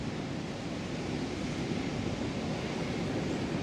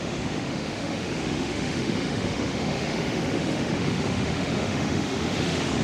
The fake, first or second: second